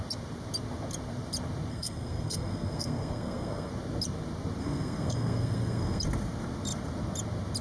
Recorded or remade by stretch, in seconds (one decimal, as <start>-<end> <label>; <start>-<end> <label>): 0.0-1.7 recorded; 1.7-3.7 remade; 3.7-4.6 recorded; 4.6-6.0 remade; 6.0-7.6 recorded